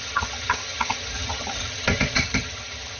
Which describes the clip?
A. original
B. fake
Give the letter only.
B